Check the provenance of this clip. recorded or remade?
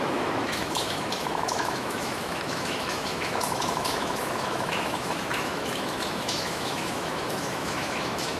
remade